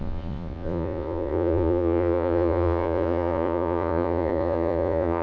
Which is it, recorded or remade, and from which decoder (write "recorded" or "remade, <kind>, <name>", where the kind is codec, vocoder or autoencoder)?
remade, vocoder, Vocos